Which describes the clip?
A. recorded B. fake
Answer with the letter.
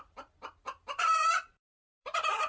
B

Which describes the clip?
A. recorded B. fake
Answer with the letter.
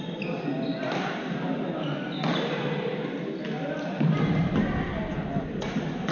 A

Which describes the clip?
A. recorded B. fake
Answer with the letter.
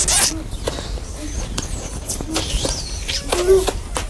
A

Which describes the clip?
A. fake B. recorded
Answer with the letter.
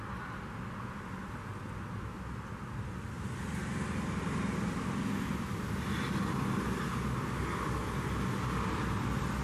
B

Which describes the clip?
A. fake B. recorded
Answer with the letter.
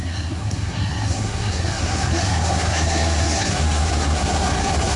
A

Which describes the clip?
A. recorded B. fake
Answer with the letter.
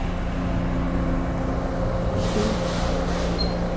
A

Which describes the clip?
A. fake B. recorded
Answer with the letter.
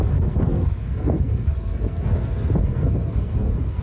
A